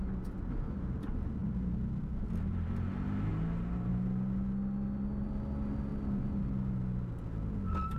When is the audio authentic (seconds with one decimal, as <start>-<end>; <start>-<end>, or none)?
0.0-8.0